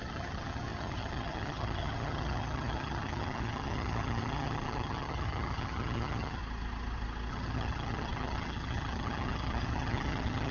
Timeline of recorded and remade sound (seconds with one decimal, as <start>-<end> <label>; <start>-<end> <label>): 0.0-6.4 remade; 6.4-7.3 recorded; 7.3-10.5 remade